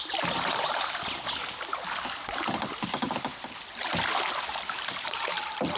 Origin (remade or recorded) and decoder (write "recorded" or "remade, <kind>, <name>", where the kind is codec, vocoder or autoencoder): recorded